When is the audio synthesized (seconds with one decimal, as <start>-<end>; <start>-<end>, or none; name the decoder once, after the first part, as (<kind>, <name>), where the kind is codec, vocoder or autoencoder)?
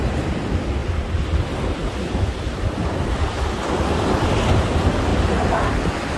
0.8-4.5 (vocoder, BigVGAN v2); 5.1-6.2